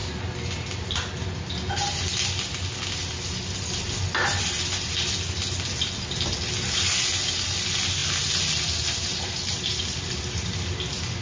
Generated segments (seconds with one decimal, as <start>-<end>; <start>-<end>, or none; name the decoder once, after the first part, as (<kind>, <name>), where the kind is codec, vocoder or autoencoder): none